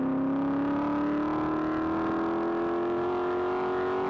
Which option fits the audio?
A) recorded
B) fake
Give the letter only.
A